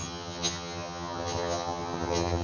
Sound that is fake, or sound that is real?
fake